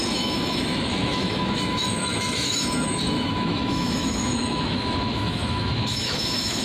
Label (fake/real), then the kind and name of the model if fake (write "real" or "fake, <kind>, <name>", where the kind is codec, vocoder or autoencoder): fake, autoencoder, DAC-VAE